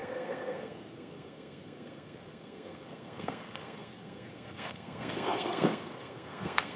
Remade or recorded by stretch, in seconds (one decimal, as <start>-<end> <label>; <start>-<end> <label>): 0.0-6.8 remade